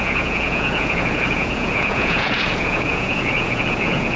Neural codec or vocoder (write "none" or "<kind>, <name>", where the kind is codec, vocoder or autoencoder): vocoder, Vocos